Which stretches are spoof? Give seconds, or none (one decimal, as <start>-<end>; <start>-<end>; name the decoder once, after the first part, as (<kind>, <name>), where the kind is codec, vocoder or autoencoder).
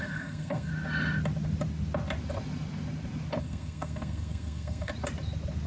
0.0-0.7 (codec, SNAC); 3.4-4.9